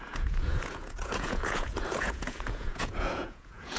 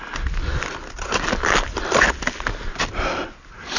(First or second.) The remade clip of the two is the first